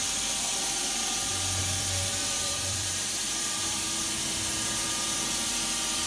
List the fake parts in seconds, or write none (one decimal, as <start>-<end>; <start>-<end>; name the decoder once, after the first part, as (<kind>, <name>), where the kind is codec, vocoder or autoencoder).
1.6-4.0 (vocoder, BigVGAN v2); 4.8-5.5